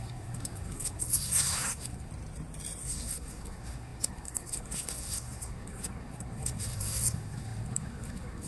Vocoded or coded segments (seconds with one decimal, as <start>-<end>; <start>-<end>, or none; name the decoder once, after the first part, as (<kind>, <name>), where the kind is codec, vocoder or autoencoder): 0.0-2.1 (codec, SNAC); 2.8-8.5